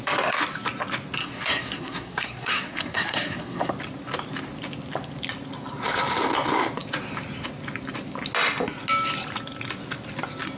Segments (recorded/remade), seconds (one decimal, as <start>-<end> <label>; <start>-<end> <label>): 0.0-1.2 recorded; 1.2-3.7 remade; 3.7-10.6 recorded